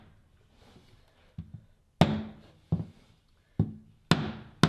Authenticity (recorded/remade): recorded